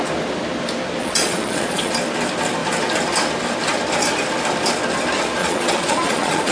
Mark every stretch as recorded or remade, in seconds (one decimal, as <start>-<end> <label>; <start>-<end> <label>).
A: 0.0-1.0 recorded; 1.0-1.9 remade; 1.9-5.4 recorded; 5.4-6.5 remade